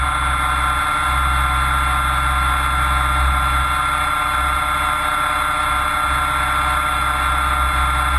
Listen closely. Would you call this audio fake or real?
real